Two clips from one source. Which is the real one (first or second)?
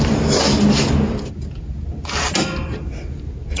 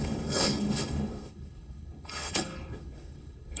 first